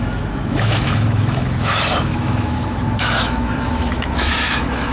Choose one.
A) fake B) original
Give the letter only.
A